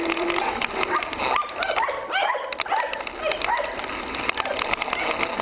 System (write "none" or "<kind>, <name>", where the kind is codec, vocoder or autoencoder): none